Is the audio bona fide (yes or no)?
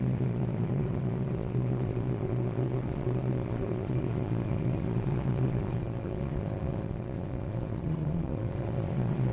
no